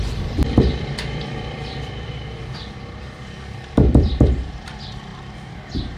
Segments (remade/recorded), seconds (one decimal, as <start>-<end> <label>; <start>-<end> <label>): 0.0-5.1 remade; 5.1-6.0 recorded